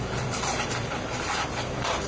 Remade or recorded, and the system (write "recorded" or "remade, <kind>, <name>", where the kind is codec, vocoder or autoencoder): remade, vocoder, BigVGAN v2